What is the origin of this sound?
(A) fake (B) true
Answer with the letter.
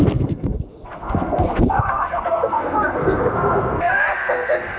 A